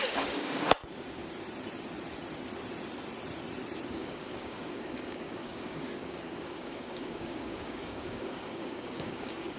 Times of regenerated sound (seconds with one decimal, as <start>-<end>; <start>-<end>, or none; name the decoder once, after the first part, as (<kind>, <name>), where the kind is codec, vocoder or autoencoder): 0.0-0.8 (codec, DAC); 3.9-9.6